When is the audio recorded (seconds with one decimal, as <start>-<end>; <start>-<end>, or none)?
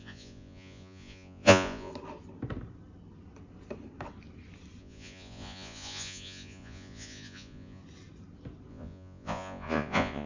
1.9-4.8; 7.8-8.7